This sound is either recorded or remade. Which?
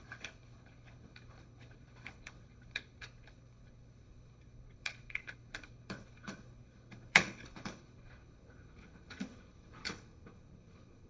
remade